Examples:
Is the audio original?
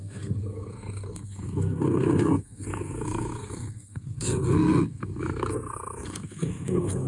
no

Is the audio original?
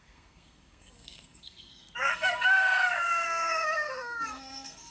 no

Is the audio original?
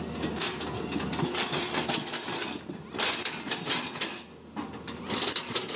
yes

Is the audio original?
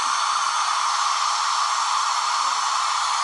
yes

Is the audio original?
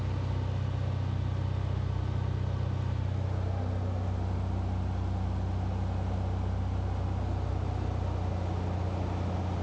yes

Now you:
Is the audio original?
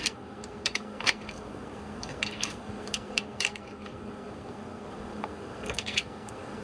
no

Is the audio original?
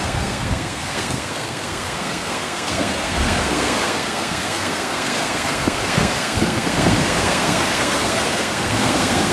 no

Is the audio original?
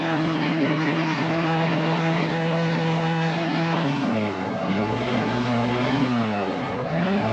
no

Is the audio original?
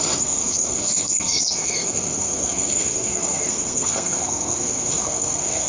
no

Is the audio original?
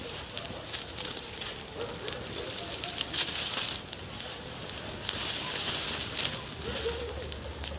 yes